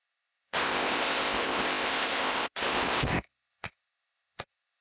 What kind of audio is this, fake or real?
fake